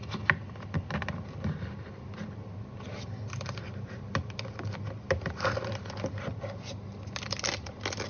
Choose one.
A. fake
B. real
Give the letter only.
B